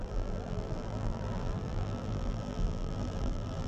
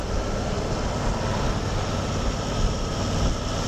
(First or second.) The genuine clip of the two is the second